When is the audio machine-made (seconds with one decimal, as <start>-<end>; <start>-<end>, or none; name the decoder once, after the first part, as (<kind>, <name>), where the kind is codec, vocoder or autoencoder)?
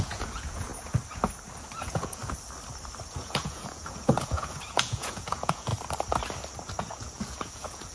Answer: 0.0-0.7 (vocoder, Vocos); 1.8-2.2; 3.1-5.7; 6.8-7.9